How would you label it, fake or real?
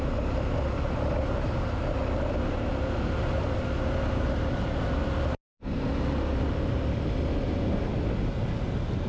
real